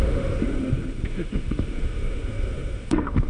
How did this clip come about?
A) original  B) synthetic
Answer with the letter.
B